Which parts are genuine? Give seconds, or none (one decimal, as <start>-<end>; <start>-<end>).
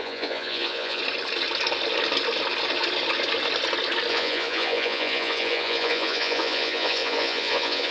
1.0-4.1